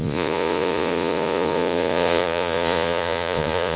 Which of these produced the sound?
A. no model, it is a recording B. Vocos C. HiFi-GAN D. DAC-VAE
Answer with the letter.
B